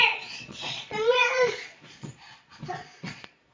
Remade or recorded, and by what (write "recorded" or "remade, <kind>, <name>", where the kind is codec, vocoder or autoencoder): remade, vocoder, Vocos